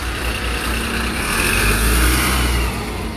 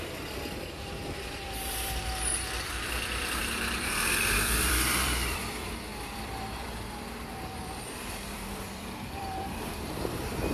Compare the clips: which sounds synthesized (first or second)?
second